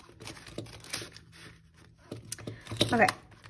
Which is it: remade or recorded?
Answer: recorded